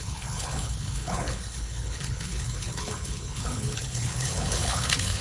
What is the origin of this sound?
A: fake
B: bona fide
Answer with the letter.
A